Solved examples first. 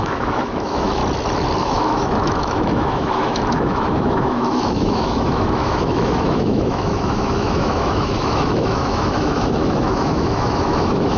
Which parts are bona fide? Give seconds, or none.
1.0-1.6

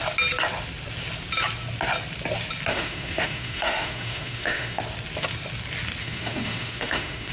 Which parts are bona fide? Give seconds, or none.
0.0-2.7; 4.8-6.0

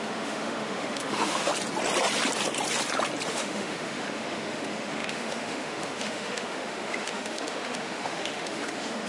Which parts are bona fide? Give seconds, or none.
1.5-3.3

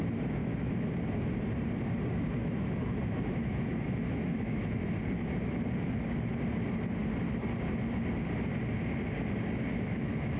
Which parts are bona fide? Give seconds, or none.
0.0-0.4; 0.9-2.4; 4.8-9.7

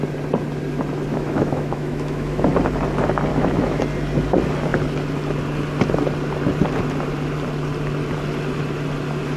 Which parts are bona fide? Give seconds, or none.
0.0-1.1; 2.5-3.3; 3.8-9.4

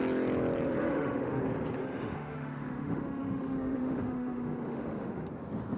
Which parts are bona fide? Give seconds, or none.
0.0-0.8; 1.4-1.8; 5.3-5.8